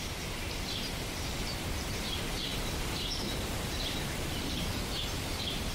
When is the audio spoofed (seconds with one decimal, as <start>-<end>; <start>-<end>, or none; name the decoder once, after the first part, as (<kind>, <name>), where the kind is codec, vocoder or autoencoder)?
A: 0.0-5.7 (vocoder, BigVGAN v2)